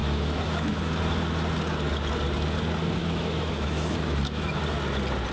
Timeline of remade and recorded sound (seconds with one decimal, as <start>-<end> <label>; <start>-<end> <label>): 0.0-1.0 remade; 1.0-3.0 recorded; 3.0-4.6 remade; 4.6-5.3 recorded